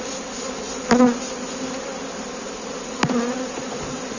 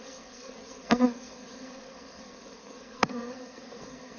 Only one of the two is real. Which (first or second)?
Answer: first